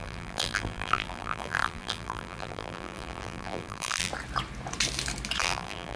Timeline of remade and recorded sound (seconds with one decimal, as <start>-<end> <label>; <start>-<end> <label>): 0.0-4.1 remade; 4.1-5.4 recorded; 5.4-6.0 remade